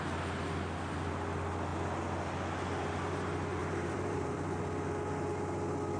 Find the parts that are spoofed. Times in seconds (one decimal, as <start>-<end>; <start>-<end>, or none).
3.6-4.6